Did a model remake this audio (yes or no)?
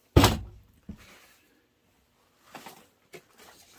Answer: no